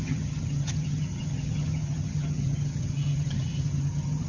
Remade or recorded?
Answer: remade